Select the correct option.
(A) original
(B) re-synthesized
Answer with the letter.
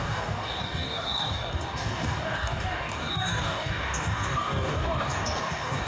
B